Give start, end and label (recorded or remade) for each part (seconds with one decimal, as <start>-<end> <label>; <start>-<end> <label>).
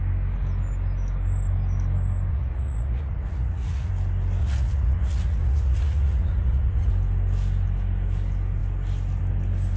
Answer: 0.0-2.3 recorded; 2.3-3.9 remade; 3.9-4.4 recorded; 4.4-6.9 remade; 6.9-9.8 recorded